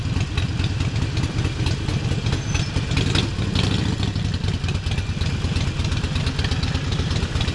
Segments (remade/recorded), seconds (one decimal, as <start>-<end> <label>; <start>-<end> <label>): 0.0-7.5 recorded

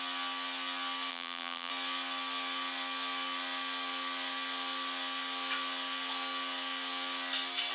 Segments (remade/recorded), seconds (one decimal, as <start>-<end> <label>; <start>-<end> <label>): 0.0-1.1 recorded; 1.1-1.7 remade; 1.7-7.7 recorded